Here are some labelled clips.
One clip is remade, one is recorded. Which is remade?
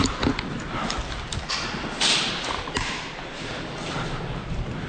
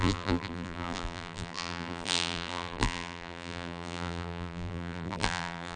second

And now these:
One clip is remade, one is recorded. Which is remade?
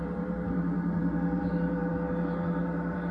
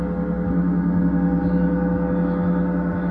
first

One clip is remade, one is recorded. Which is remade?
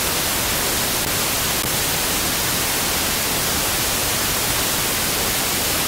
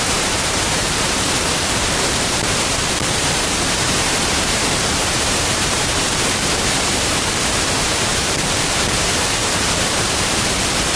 second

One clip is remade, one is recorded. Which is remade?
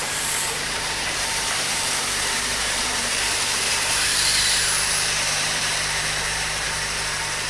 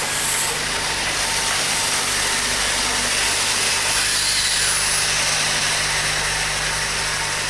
first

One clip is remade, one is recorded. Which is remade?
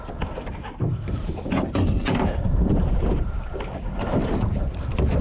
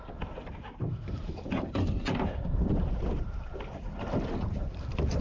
second